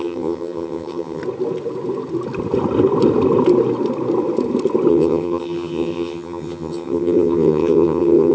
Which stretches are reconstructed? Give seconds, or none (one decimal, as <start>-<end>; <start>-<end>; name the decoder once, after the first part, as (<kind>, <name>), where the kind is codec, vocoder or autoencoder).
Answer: 0.0-1.2 (vocoder, HiFi-GAN); 4.9-8.3